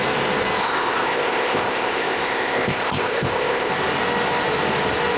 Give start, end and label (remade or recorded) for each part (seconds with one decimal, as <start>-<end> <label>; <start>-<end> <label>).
0.0-0.6 recorded; 0.6-3.7 remade; 3.7-5.2 recorded